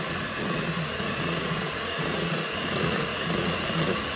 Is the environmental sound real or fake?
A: fake